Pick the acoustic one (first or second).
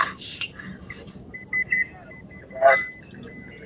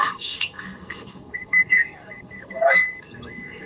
first